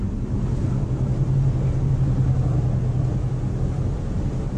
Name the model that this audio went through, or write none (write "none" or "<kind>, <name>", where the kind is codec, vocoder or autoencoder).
none